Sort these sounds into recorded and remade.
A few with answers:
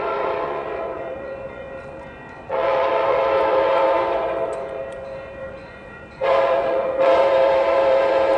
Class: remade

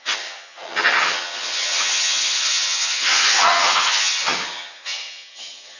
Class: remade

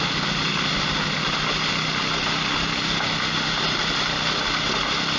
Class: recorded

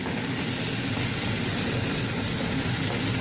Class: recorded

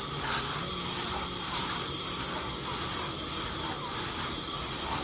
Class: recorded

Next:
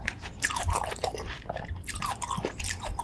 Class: remade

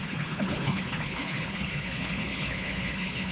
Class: remade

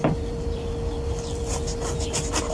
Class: recorded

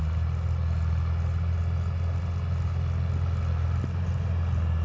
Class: recorded